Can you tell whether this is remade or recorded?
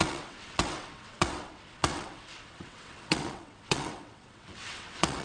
remade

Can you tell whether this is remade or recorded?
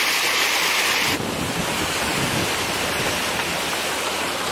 recorded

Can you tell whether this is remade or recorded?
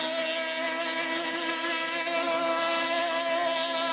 recorded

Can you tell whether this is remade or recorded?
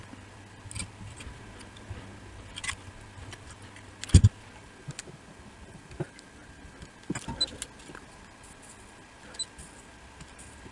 recorded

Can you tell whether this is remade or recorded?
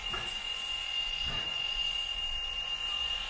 remade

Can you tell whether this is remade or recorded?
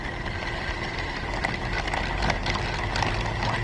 recorded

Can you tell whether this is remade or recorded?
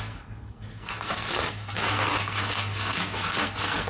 remade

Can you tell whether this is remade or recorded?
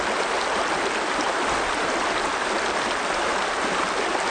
recorded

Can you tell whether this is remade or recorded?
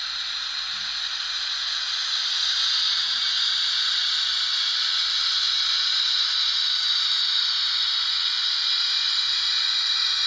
recorded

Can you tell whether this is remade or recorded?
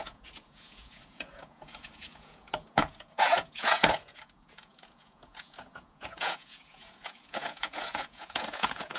remade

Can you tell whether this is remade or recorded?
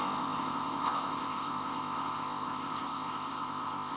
remade